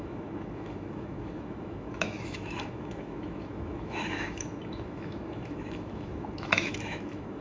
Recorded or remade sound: remade